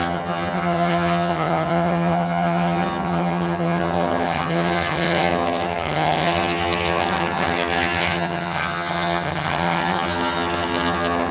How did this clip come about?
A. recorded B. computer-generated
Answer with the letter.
B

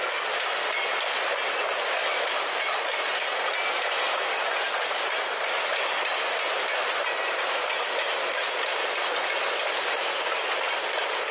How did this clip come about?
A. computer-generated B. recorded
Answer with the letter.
B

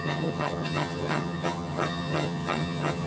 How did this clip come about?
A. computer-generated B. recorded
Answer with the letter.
A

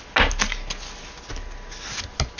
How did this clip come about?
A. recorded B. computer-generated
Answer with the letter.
A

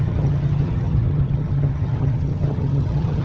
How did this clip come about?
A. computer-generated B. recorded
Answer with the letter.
A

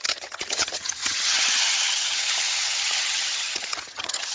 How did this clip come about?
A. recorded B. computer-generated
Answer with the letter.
B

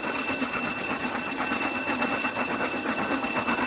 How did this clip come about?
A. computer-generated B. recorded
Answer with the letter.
A